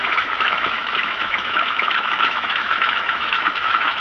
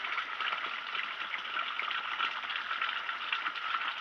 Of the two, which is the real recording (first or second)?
second